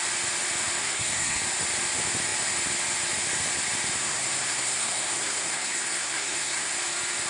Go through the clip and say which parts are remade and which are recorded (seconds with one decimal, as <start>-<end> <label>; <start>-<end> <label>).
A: 0.0-0.8 recorded; 0.8-1.4 remade; 1.4-4.0 recorded; 4.0-6.7 remade; 6.7-7.3 recorded